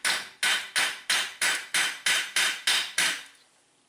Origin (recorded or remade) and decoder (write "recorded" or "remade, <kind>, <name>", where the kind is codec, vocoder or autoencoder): recorded